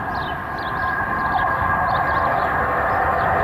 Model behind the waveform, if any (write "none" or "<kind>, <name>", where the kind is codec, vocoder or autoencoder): none